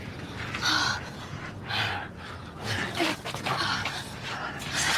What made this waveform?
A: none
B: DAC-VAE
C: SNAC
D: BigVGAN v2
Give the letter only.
A